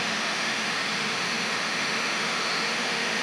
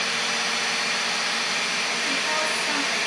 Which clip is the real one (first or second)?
second